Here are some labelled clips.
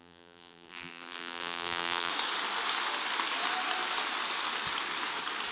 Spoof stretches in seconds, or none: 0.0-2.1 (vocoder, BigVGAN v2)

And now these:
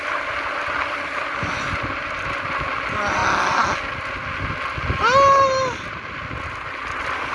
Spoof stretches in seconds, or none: 0.0-3.2 (vocoder, BigVGAN v2)

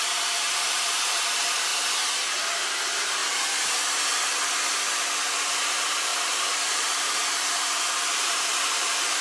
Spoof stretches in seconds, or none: 0.0-1.7 (vocoder, BigVGAN v2); 2.4-3.2; 5.4-9.2

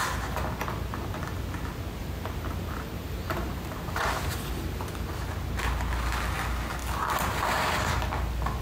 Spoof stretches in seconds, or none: 2.0-4.9 (vocoder, BigVGAN v2)

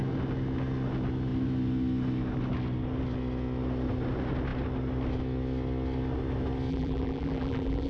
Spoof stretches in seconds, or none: 6.7-7.9 (vocoder, BigVGAN v2)

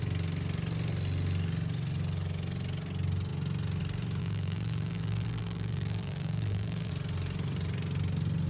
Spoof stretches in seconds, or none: 4.2-6.9 (vocoder, BigVGAN v2)